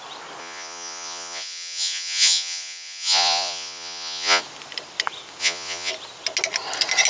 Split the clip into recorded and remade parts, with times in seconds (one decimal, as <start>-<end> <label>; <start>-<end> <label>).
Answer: 0.0-0.4 recorded; 0.4-4.4 remade; 4.4-5.4 recorded; 5.4-5.9 remade; 5.9-7.1 recorded